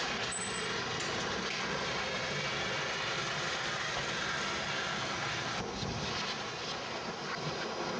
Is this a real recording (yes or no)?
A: yes